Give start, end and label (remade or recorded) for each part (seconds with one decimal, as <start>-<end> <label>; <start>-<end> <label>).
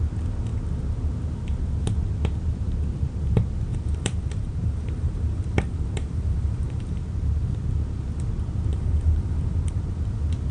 0.0-3.7 recorded; 3.7-7.0 remade; 7.0-8.7 recorded; 8.7-9.8 remade; 9.8-10.5 recorded